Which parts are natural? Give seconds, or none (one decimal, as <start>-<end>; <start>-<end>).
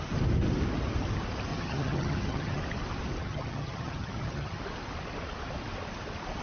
0.0-1.5; 2.6-3.2; 4.6-6.4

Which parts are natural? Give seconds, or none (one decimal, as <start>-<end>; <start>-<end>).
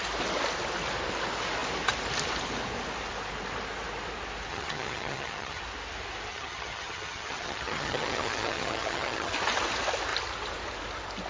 0.0-4.5; 5.6-6.3; 9.3-11.3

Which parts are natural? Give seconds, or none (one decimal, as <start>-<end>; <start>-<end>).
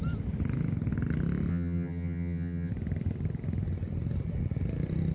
0.0-1.5; 2.7-5.1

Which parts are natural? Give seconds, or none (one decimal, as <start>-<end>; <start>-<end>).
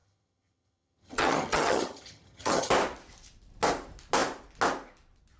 2.7-5.4